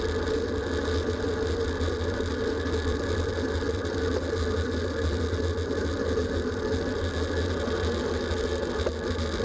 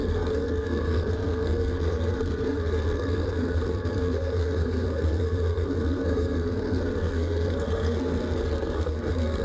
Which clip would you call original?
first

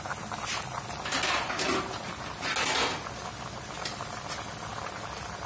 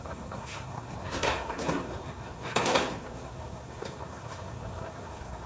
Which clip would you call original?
first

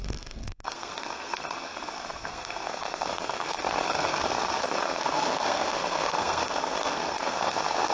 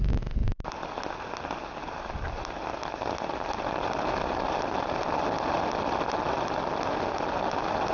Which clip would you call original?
second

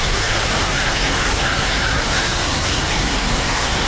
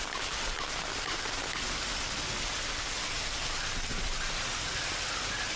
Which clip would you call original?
second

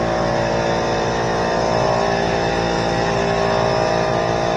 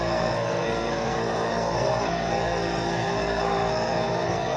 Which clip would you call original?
first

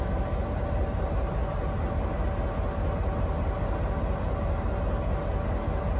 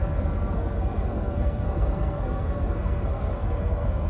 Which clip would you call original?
first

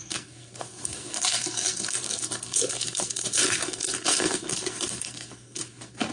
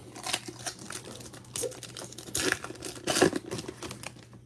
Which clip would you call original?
second